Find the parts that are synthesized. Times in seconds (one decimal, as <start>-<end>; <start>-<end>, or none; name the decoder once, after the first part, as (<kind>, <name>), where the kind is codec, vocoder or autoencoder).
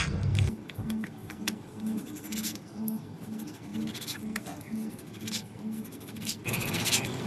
0.0-7.3 (codec, SNAC)